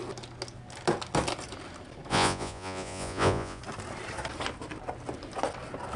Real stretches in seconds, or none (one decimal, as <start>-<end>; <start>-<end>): 0.0-2.1; 3.6-6.0